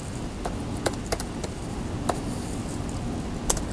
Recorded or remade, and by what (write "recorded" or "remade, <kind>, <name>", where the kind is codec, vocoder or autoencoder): recorded